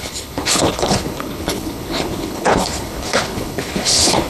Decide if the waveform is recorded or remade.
remade